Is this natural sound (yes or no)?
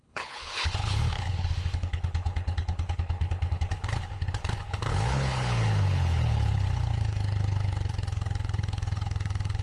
no